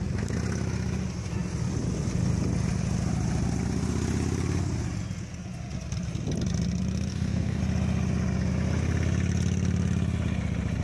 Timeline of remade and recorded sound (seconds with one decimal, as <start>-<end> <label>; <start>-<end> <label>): 0.0-7.1 recorded; 7.1-7.6 remade; 7.6-10.8 recorded